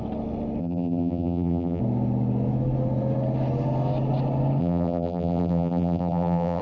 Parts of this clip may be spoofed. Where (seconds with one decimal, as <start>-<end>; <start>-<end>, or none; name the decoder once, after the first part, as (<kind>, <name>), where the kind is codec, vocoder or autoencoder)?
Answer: 0.6-1.8 (vocoder, BigVGAN v2); 4.6-6.6